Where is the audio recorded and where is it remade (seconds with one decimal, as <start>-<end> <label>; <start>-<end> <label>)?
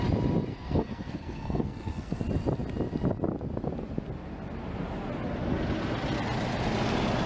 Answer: 0.0-0.5 recorded; 0.5-2.2 remade; 2.2-7.3 recorded